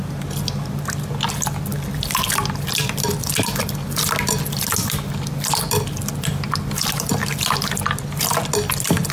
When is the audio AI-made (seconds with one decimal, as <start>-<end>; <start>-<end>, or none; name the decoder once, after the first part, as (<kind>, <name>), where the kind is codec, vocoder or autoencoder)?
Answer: none